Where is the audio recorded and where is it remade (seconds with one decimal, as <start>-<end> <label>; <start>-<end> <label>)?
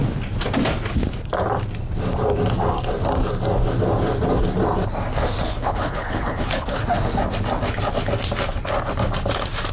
0.0-5.5 recorded; 5.5-6.8 remade; 6.8-9.7 recorded